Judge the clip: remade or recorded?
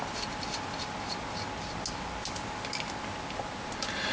recorded